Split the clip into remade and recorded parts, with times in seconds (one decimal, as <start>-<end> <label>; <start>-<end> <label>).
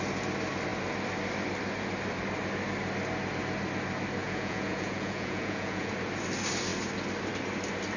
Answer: 0.0-4.2 recorded; 4.2-5.9 remade; 5.9-8.0 recorded